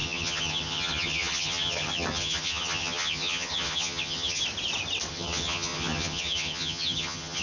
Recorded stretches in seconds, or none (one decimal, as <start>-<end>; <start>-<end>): 4.4-5.1

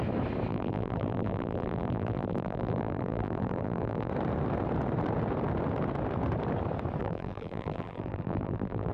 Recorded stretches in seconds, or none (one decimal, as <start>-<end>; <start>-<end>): 0.0-0.5; 4.1-7.0